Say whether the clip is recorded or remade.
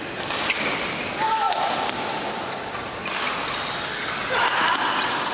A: recorded